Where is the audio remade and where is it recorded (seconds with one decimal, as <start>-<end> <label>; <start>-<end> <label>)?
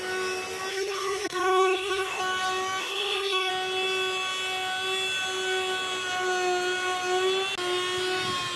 0.0-0.7 recorded; 0.7-2.2 remade; 2.2-2.8 recorded; 2.8-3.5 remade; 3.5-8.6 recorded